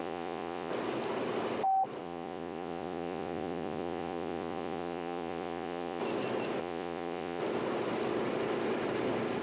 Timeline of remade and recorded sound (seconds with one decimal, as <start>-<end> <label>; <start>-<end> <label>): 0.0-0.7 remade; 0.7-2.0 recorded; 2.0-6.0 remade; 6.0-6.6 recorded; 6.6-7.4 remade; 7.4-9.4 recorded